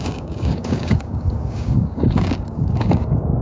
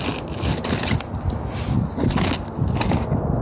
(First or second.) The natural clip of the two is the second